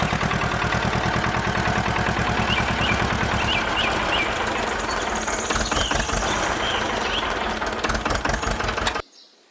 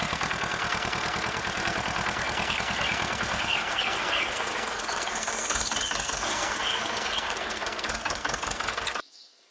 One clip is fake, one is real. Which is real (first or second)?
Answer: first